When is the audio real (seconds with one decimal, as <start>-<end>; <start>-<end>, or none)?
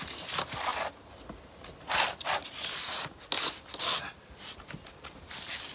0.0-5.7